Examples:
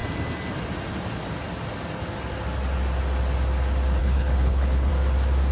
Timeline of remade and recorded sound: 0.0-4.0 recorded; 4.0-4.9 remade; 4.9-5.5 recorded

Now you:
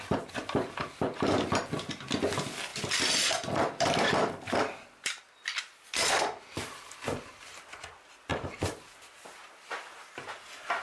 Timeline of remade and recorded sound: 0.0-2.7 recorded; 2.7-6.2 remade; 6.2-8.3 recorded; 8.3-9.5 remade; 9.5-10.8 recorded

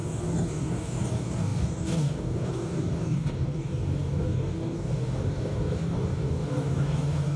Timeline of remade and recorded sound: 0.0-7.4 remade

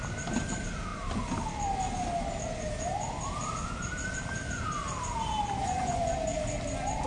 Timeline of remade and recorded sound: 0.0-5.6 recorded; 5.6-6.1 remade; 6.1-7.1 recorded

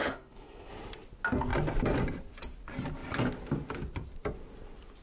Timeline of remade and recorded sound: 0.0-0.7 remade; 0.7-5.0 recorded